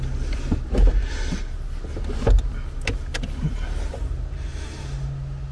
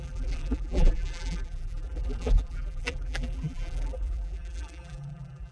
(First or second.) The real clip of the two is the first